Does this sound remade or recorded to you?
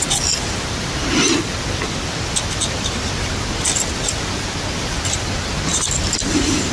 recorded